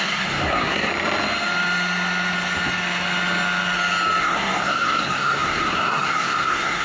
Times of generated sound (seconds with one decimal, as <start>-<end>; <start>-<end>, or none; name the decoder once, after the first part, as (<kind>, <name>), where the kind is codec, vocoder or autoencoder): 0.0-0.9 (codec, SNAC); 4.2-6.8